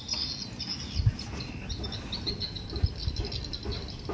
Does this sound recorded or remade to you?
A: recorded